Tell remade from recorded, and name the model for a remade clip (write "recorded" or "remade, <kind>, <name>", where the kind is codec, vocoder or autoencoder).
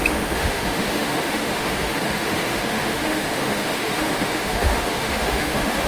remade, autoencoder, DAC-VAE